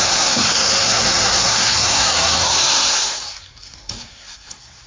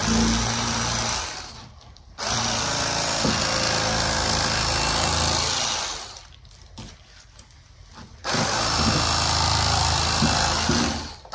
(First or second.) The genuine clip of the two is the second